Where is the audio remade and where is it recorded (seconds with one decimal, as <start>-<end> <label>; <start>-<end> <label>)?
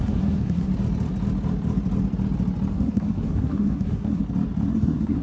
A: 0.0-0.7 remade; 0.7-2.7 recorded; 2.7-4.2 remade; 4.2-4.7 recorded; 4.7-5.2 remade